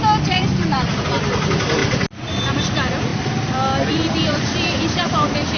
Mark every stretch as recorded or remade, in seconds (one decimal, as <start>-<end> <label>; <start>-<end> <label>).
0.0-1.8 remade; 1.8-2.6 recorded; 2.6-3.1 remade; 3.1-3.9 recorded; 3.9-5.6 remade